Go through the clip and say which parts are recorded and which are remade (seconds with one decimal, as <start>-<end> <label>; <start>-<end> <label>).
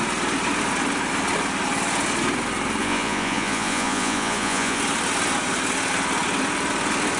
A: 0.0-2.8 recorded; 2.8-4.8 remade; 4.8-7.2 recorded